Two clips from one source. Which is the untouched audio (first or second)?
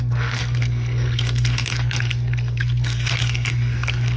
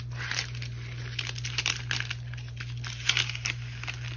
second